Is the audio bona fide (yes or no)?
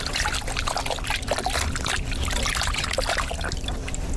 yes